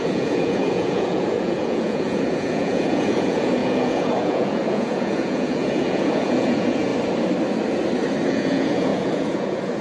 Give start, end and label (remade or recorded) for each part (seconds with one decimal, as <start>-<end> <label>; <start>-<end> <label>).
0.0-6.9 remade; 6.9-8.3 recorded; 8.3-9.8 remade